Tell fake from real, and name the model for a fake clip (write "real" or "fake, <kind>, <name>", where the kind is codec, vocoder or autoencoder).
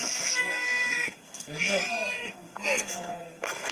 fake, codec, SNAC